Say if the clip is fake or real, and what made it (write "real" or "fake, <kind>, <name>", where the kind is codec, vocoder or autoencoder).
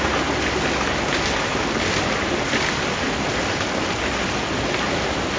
real